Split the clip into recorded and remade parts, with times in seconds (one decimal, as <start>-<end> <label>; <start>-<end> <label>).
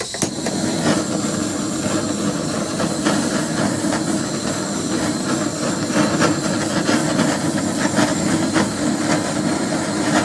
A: 0.0-10.2 recorded